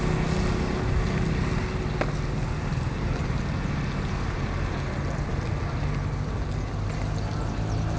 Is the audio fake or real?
real